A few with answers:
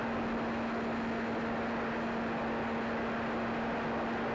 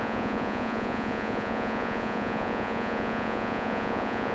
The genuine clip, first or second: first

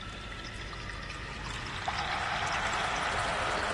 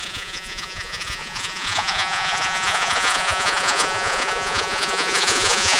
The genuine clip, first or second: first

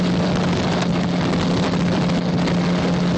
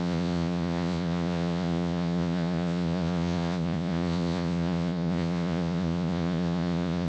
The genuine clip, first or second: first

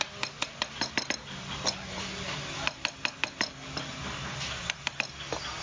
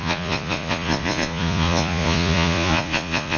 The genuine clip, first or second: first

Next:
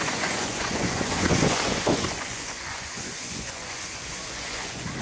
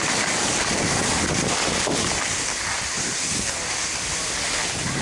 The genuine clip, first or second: second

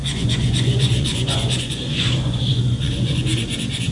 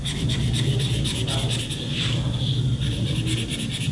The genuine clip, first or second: second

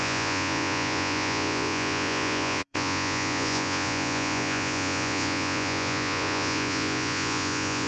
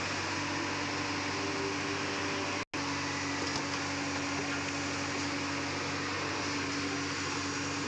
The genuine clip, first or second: second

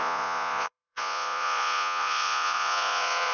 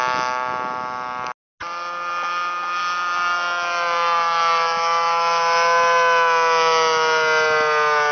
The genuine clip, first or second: second